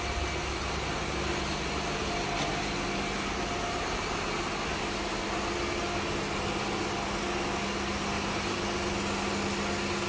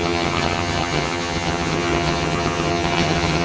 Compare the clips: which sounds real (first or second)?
first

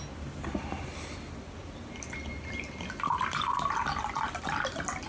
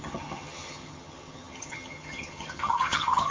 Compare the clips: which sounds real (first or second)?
first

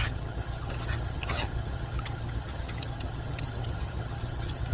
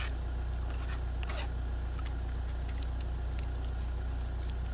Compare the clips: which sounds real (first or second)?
second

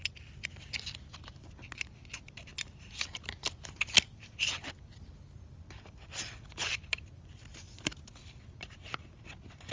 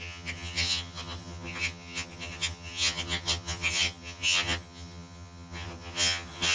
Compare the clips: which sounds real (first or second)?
first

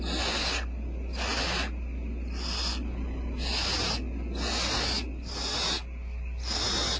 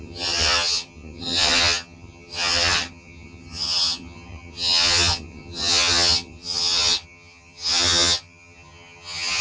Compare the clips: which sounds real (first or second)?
first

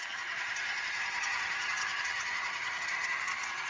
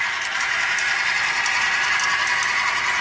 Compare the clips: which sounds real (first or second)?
second